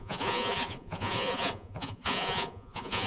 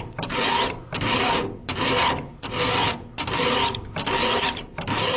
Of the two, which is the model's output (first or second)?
first